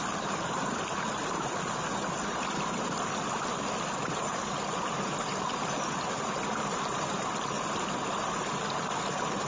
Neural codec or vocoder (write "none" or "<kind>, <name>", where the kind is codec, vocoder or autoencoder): none